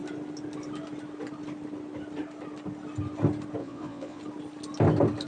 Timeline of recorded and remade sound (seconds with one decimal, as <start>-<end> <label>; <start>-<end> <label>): 0.0-3.6 recorded; 3.6-4.2 remade; 4.2-5.3 recorded